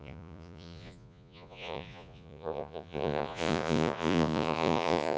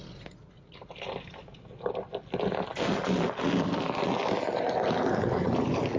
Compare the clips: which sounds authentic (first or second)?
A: second